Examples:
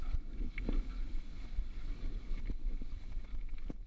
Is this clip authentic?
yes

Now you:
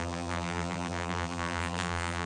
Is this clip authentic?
no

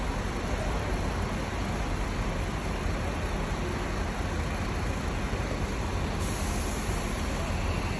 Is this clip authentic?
yes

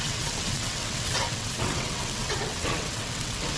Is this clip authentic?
no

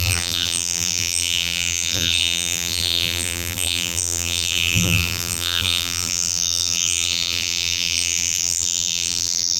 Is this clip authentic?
no